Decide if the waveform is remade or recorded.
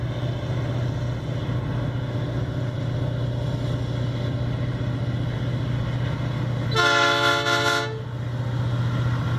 recorded